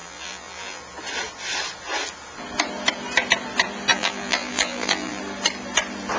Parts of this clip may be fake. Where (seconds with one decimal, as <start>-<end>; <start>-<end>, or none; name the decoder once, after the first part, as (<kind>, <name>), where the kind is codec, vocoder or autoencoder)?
0.0-0.8 (vocoder, BigVGAN v2); 3.9-5.2